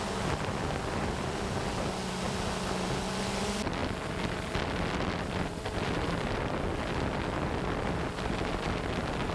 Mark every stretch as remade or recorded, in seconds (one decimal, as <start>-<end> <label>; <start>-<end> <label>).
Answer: 0.0-9.3 recorded